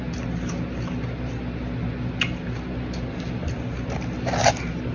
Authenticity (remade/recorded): recorded